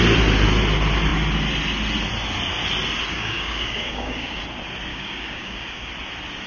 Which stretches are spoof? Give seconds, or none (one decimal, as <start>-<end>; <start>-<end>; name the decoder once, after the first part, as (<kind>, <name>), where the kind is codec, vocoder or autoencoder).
3.1-4.4 (codec, DAC); 4.9-5.9